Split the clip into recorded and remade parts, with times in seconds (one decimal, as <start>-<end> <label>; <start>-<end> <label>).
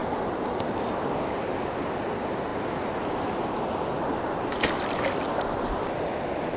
0.0-6.6 recorded